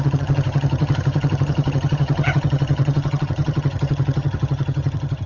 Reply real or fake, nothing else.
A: fake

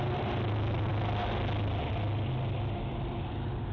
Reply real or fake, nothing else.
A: real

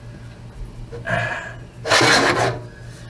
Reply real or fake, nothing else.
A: real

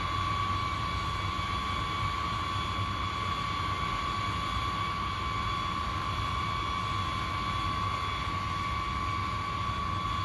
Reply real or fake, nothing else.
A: real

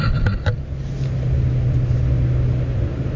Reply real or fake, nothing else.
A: real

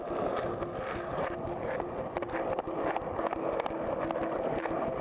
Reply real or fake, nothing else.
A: real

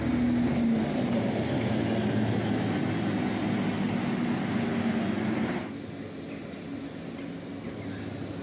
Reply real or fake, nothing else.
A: real